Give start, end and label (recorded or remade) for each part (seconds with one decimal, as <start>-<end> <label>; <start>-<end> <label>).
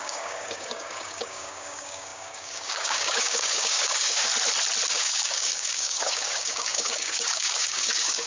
0.0-4.3 remade; 4.3-4.9 recorded; 4.9-8.3 remade